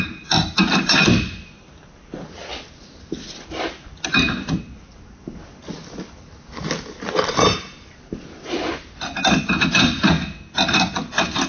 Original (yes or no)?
yes